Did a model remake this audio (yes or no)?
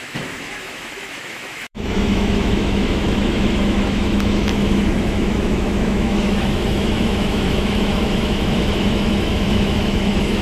yes